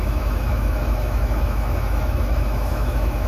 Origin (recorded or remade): remade